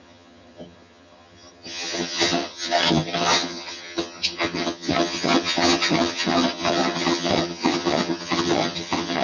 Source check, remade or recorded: remade